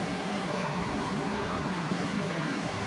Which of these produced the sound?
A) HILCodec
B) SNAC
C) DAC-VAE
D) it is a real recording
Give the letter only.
B